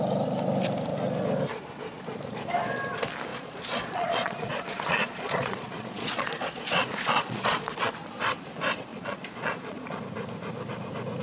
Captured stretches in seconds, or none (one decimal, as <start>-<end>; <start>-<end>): 0.0-3.3; 7.9-8.9; 10.0-11.2